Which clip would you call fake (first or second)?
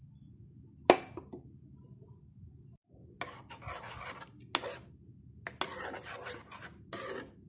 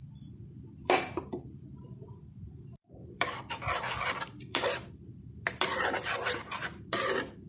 second